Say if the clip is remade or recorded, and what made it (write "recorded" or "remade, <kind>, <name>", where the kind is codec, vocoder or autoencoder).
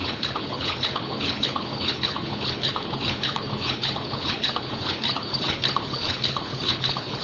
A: remade, codec, HILCodec